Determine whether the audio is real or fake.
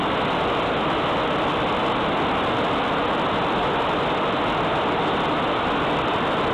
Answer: real